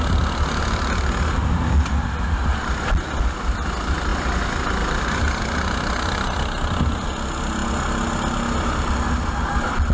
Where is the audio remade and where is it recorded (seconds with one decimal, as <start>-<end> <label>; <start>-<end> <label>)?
0.0-9.9 recorded